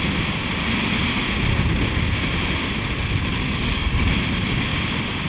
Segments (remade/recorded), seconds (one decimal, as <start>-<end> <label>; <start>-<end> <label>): 0.0-3.3 recorded; 3.3-4.1 remade; 4.1-5.3 recorded